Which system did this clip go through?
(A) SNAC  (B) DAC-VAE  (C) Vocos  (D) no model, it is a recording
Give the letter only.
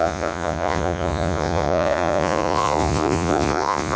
C